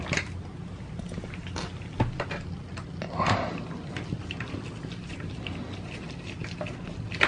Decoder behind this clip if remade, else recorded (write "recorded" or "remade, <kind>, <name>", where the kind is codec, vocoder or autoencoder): recorded